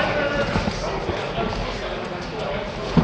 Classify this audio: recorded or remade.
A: recorded